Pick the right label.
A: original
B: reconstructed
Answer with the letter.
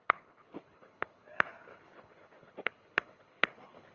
B